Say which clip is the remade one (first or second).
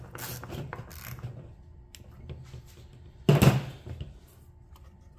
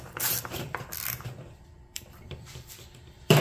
second